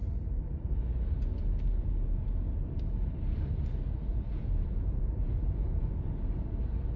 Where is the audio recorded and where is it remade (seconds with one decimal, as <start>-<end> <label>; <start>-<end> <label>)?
0.0-1.8 recorded; 1.8-2.4 remade; 2.4-4.1 recorded; 4.1-5.9 remade; 5.9-7.0 recorded

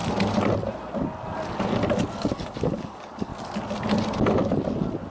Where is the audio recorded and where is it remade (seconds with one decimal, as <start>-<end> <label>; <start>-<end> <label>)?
0.0-2.1 recorded; 2.1-3.3 remade; 3.3-5.1 recorded

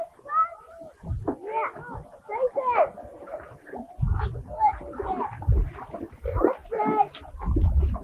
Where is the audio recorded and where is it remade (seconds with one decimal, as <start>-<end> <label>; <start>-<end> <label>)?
0.0-8.0 recorded

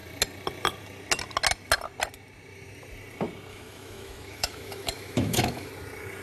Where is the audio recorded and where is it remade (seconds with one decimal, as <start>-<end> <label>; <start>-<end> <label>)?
0.0-3.5 recorded; 3.5-5.7 remade; 5.7-6.2 recorded

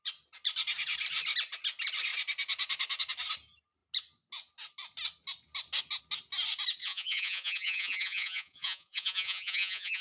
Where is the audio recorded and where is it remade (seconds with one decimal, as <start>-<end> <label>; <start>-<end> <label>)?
0.0-6.8 recorded; 6.8-10.0 remade

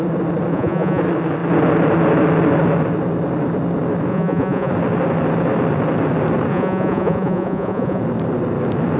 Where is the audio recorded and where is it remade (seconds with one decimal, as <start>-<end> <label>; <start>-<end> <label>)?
0.0-0.5 recorded; 0.5-1.0 remade; 1.0-4.1 recorded; 4.1-4.7 remade; 4.7-6.5 recorded; 6.5-8.0 remade; 8.0-9.0 recorded

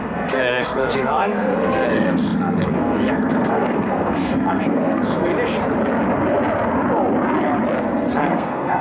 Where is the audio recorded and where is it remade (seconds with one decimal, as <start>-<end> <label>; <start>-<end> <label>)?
0.0-5.3 remade; 5.3-7.8 recorded; 7.8-8.8 remade